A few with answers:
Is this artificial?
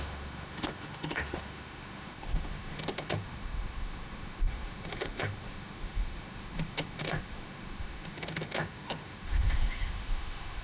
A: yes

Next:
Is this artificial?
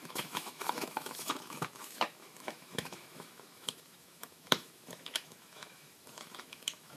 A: yes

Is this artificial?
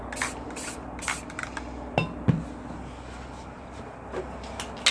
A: no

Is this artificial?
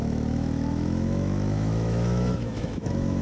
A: yes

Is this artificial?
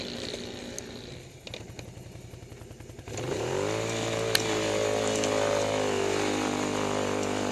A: no